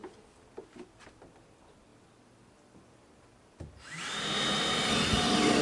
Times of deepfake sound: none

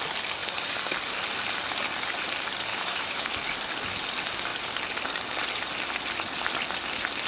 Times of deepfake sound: 2.7-3.3 (autoencoder, DAC-VAE)

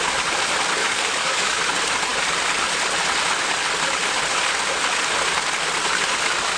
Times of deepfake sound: 0.8-1.6 (codec, DAC)

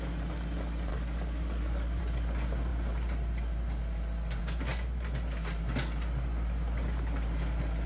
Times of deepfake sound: 0.9-2.0 (codec, DAC)